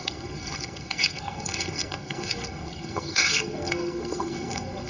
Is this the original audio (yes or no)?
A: no